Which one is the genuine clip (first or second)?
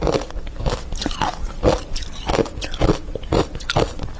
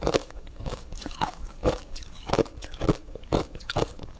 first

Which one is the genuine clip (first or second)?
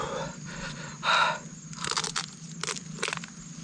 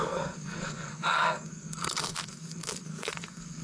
first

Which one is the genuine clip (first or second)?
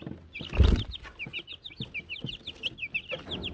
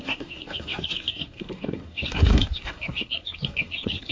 first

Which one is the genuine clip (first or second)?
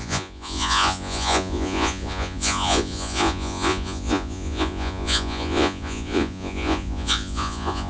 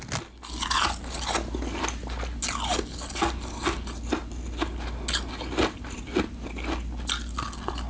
second